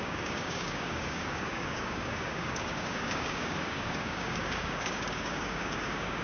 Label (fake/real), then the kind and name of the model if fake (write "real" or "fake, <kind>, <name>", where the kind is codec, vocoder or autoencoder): fake, codec, DAC